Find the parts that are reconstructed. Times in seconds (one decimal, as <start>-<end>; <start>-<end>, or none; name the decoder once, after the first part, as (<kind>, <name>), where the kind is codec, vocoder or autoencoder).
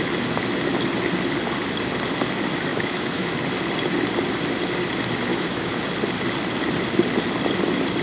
2.7-3.3 (autoencoder, DAC-VAE); 5.3-5.8